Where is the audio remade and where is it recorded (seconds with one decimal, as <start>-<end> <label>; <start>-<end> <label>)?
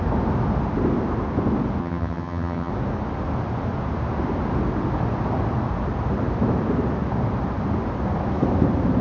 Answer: 0.0-1.8 recorded; 1.8-2.7 remade; 2.7-9.0 recorded